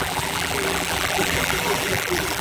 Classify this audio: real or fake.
fake